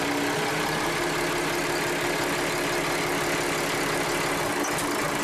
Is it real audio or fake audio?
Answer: real